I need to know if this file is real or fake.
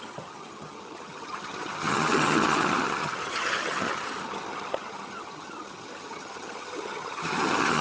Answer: fake